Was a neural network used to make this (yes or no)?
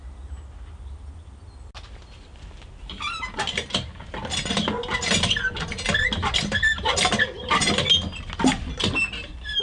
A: no